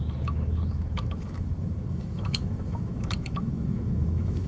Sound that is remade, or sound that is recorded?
remade